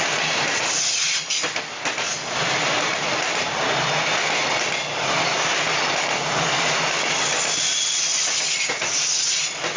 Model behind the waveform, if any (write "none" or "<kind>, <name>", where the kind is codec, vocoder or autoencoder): none